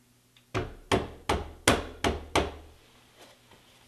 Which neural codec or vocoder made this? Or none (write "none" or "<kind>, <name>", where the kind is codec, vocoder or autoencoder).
none